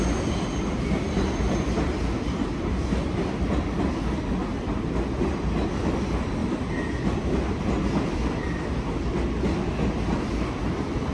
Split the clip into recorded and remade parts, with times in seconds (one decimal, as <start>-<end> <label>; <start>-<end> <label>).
0.0-11.1 recorded